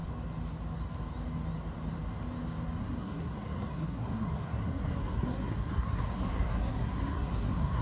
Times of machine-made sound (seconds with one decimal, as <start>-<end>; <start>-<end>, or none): 2.8-7.8